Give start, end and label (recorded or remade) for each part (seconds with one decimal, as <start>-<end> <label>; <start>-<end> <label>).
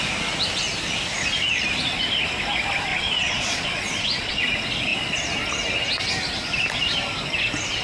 0.0-2.9 recorded; 2.9-4.4 remade; 4.4-7.8 recorded